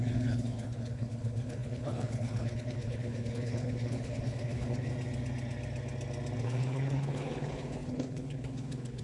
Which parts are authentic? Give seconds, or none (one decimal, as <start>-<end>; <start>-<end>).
4.9-6.4

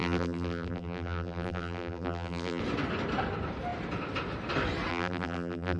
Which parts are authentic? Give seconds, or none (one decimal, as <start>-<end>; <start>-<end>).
2.6-4.9

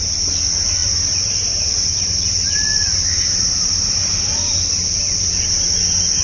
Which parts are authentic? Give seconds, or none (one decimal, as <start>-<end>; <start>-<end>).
0.0-0.8; 4.5-6.2

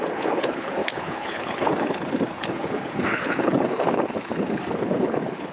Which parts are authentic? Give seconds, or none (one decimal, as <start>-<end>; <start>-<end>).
none

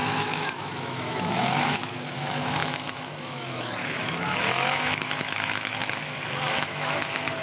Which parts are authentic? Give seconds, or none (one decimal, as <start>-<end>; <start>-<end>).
5.8-6.5

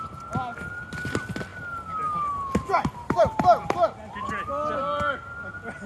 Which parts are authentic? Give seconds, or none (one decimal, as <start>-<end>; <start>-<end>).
0.0-5.9

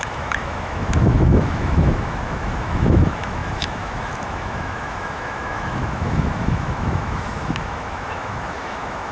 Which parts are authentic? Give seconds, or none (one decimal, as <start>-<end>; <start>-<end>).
none